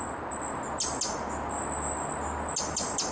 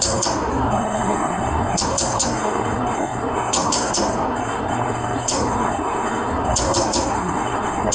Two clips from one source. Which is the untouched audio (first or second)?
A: first